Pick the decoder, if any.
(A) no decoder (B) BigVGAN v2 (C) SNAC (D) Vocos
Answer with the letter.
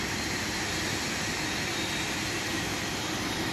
B